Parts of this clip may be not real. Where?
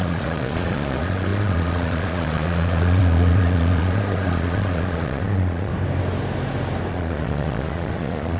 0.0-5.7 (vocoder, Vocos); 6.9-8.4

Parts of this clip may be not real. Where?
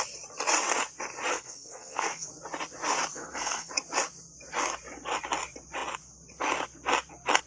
1.3-2.3 (codec, SNAC); 3.1-3.7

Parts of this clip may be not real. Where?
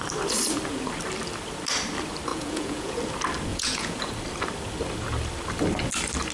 2.3-3.0 (vocoder, Vocos); 3.5-4.1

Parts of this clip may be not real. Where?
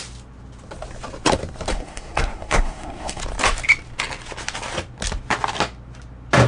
1.7-3.2 (codec, SNAC)